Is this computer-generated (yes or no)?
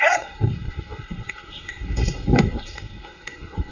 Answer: yes